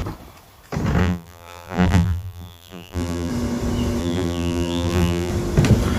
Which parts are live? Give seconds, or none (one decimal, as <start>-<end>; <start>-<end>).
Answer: 0.0-1.0; 3.3-4.0; 5.3-6.0